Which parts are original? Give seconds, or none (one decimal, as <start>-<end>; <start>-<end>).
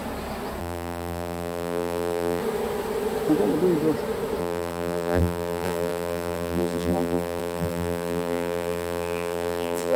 0.0-0.6; 2.4-4.4